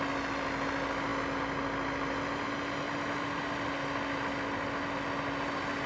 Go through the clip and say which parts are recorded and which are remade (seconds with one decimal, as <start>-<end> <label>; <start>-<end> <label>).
0.0-5.9 recorded